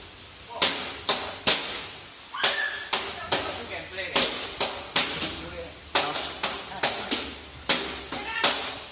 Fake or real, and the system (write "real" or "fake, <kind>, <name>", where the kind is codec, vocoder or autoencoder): real